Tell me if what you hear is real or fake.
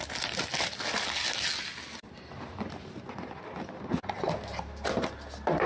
real